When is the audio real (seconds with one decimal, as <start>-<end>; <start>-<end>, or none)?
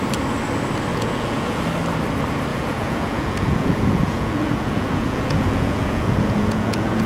0.0-0.9; 1.6-2.5